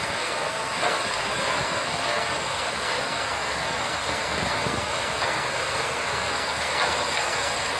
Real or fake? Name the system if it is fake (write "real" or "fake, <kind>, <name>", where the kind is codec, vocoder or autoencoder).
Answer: fake, codec, SNAC